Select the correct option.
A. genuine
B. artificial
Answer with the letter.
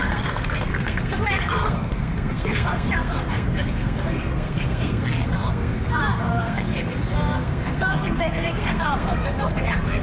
B